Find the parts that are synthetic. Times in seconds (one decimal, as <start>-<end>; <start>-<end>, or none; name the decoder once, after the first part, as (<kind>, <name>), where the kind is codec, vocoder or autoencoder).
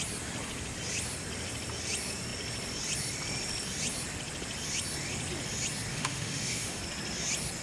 5.9-6.8 (autoencoder, DAC-VAE)